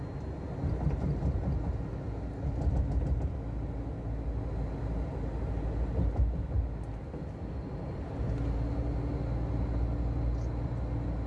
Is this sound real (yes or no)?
yes